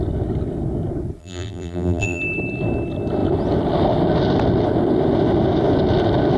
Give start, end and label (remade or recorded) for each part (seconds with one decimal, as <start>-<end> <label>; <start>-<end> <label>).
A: 0.0-1.2 recorded; 1.2-2.2 remade; 2.2-6.4 recorded